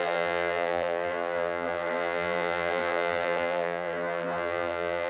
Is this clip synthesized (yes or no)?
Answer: yes